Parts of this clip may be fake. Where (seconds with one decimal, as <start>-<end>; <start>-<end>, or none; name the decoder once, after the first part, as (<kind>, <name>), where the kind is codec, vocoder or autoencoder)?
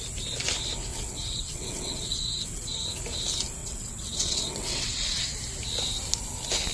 0.9-3.0 (vocoder, WaveNeXt); 3.6-5.4